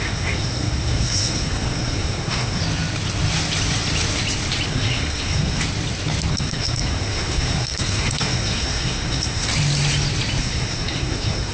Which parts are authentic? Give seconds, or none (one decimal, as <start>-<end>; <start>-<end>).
2.6-4.7; 5.6-6.3; 9.5-10.4